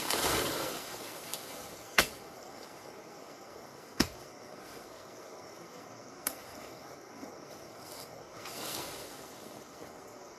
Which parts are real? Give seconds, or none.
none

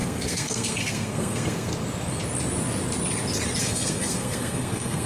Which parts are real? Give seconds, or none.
1.7-3.6

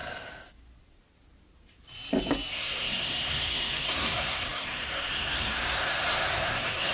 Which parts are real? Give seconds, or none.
0.0-2.5

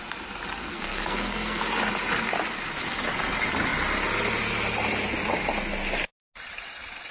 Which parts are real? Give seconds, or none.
0.0-0.6; 1.6-7.1

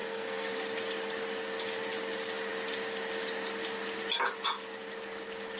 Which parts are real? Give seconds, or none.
0.5-5.6